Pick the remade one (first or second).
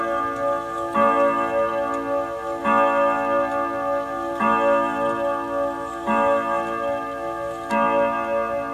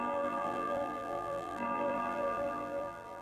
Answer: second